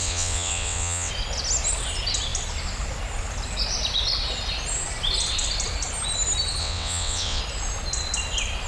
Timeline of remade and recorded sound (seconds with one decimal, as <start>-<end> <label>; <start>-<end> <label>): 0.0-1.1 remade; 1.1-6.6 recorded; 6.6-7.4 remade; 7.4-8.7 recorded